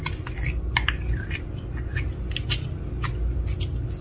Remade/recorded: recorded